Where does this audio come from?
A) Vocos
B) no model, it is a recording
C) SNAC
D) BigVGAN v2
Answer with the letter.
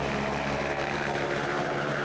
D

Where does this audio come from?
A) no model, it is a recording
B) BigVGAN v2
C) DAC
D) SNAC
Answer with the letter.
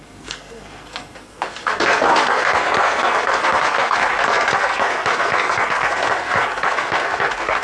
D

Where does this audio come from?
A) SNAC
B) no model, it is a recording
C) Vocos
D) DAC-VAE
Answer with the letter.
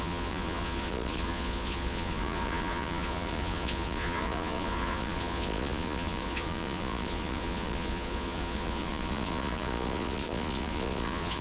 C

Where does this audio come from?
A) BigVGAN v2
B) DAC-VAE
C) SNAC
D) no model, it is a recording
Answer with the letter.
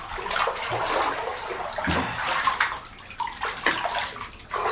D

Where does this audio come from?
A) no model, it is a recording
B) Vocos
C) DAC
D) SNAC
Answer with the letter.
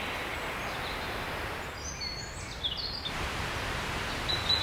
A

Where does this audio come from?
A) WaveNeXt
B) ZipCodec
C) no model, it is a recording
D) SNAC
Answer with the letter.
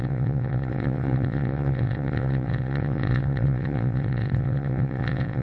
A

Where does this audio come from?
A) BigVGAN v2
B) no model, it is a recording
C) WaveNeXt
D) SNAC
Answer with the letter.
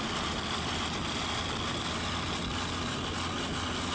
B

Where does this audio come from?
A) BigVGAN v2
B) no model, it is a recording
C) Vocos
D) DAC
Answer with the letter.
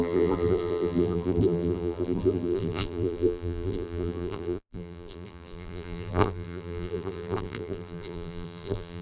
A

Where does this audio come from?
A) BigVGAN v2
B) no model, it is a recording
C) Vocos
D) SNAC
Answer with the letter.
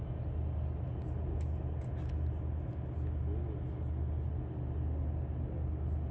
B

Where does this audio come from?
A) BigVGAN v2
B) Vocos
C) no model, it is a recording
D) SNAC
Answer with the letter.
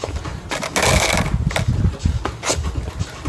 C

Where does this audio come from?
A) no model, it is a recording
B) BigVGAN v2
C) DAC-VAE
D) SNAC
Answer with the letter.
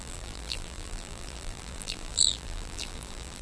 B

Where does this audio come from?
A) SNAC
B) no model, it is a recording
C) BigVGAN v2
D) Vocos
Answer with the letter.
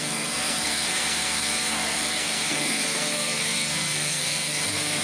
A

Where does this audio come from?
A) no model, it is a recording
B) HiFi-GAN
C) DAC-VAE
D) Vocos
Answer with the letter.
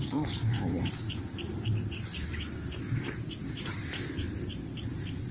A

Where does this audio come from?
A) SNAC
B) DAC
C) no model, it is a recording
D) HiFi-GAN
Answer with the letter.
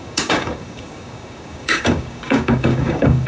B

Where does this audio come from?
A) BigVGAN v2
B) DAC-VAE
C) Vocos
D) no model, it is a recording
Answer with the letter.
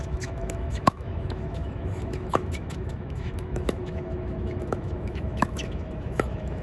B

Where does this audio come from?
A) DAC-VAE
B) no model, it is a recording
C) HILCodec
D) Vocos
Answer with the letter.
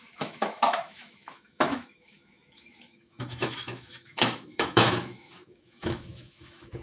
A